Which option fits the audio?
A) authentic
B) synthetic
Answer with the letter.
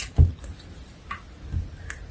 A